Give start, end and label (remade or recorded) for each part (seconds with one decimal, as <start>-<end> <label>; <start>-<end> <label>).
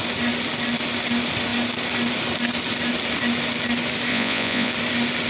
0.0-4.1 recorded; 4.1-4.7 remade; 4.7-5.3 recorded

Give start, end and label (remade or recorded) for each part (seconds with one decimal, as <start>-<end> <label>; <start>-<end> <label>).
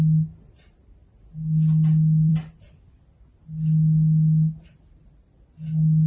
0.0-6.1 recorded